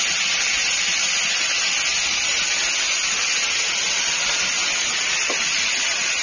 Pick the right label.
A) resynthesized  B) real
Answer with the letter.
B